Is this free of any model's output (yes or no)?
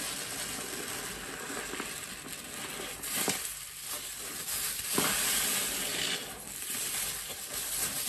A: yes